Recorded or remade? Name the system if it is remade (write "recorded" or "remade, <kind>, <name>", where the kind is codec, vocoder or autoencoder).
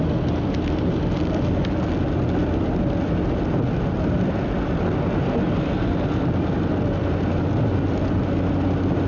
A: recorded